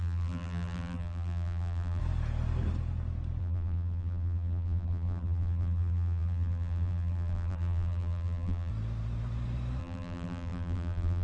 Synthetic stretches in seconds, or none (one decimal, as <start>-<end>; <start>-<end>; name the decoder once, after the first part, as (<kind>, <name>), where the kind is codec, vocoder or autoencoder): 0.0-2.0 (vocoder, BigVGAN v2); 3.4-8.7; 9.8-11.2